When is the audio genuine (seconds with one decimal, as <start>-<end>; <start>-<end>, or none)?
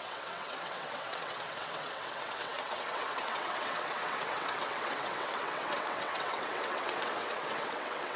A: none